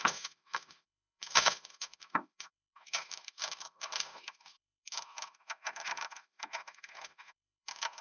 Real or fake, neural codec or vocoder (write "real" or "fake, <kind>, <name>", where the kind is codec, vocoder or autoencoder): fake, autoencoder, DAC-VAE